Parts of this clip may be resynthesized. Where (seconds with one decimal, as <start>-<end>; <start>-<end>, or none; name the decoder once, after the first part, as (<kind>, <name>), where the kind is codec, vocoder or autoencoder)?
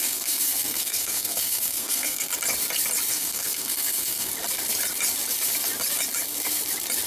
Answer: 0.0-2.3 (codec, SNAC); 3.1-4.3